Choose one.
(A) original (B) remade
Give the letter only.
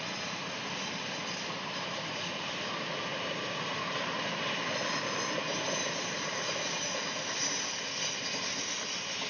A